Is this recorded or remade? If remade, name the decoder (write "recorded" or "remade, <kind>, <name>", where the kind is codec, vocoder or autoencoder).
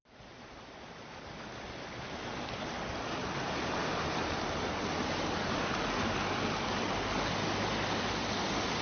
recorded